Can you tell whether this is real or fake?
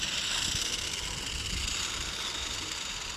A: real